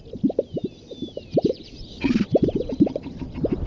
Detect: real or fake real